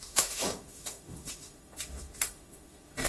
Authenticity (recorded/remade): remade